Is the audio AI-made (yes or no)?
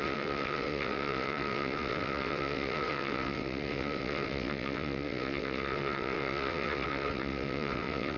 yes